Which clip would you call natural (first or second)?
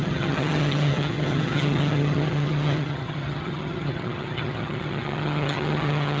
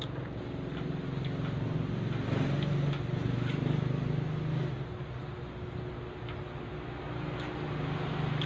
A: second